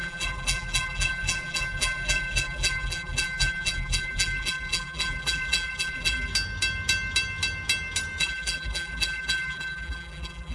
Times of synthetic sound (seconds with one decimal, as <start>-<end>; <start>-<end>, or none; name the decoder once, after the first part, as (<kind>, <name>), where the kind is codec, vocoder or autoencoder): 0.0-6.3 (vocoder, BigVGAN v2); 8.2-10.5